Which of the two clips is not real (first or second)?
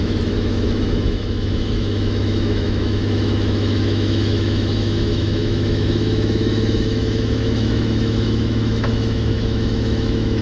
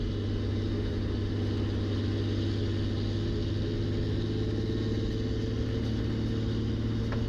first